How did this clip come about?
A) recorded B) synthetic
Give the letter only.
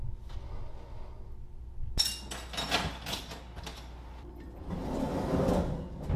A